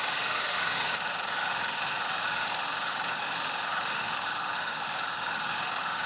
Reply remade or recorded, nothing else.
remade